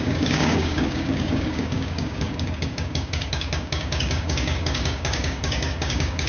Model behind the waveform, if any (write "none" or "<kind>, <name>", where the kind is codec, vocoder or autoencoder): codec, DAC